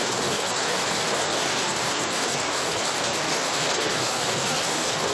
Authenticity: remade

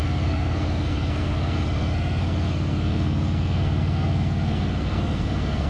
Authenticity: remade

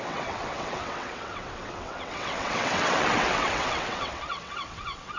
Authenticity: remade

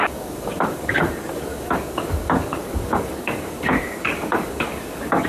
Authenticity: remade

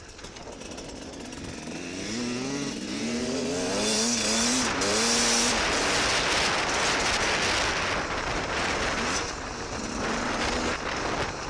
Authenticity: recorded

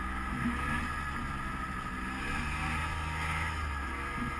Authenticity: recorded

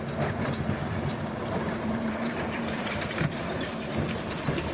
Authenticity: remade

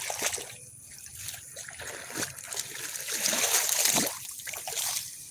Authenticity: recorded